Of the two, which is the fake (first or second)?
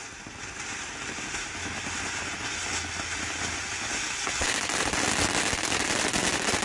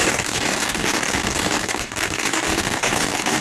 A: second